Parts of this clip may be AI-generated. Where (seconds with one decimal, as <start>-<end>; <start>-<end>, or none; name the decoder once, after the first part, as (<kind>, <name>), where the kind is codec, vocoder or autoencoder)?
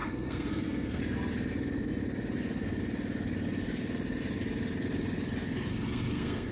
0.0-1.0 (codec, SNAC); 5.7-6.5